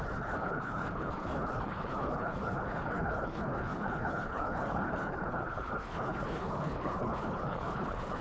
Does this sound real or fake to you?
fake